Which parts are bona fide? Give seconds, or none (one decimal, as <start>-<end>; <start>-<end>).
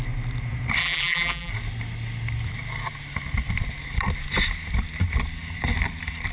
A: 0.0-0.8; 1.5-6.3